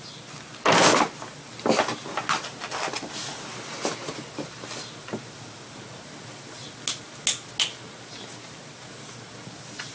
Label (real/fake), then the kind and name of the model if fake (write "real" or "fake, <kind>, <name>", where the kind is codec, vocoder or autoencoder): real